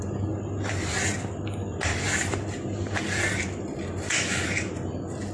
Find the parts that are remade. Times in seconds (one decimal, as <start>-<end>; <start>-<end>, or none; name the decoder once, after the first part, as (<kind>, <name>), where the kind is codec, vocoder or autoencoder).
4.1-4.7 (autoencoder, DAC-VAE)